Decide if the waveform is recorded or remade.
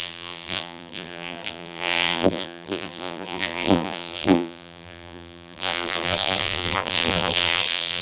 remade